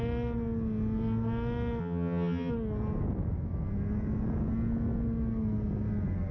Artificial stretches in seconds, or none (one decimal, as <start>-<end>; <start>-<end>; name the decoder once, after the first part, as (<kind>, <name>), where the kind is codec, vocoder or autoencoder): 1.8-2.5 (vocoder, HiFi-GAN)